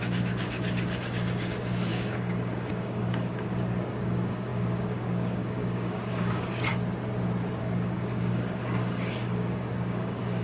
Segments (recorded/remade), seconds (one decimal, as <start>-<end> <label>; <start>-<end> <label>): 0.0-6.7 remade; 6.7-7.6 recorded; 7.6-10.4 remade